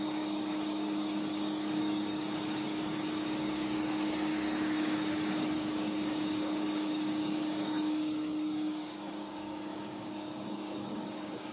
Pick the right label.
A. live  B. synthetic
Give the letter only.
B